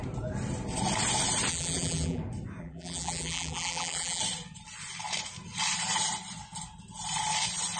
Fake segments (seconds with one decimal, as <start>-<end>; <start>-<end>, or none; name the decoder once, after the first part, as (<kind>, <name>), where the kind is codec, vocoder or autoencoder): 1.5-2.2 (vocoder, BigVGAN v2); 2.6-4.2